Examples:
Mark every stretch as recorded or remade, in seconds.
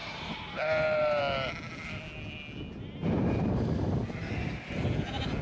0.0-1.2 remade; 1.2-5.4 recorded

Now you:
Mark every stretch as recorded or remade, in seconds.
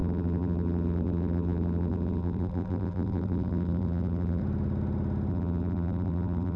0.0-4.4 remade; 4.4-5.3 recorded; 5.3-6.6 remade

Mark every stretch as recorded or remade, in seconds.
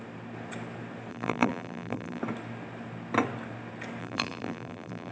0.0-1.1 recorded; 1.1-2.2 remade; 2.2-4.0 recorded; 4.0-5.1 remade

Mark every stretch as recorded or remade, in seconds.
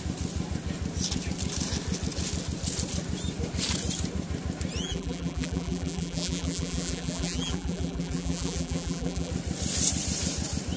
0.0-4.8 recorded; 4.8-9.3 remade; 9.3-10.8 recorded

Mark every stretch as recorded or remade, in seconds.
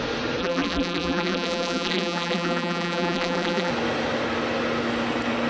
0.0-0.4 recorded; 0.4-3.7 remade; 3.7-5.5 recorded